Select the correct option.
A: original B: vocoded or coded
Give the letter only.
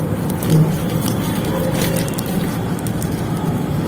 A